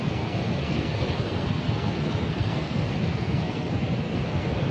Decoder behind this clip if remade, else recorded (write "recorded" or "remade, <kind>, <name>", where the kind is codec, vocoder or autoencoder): remade, codec, SNAC